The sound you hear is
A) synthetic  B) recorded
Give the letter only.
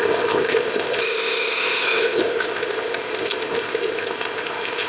A